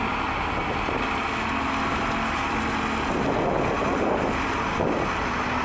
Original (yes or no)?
yes